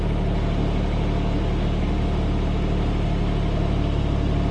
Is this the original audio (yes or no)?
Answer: yes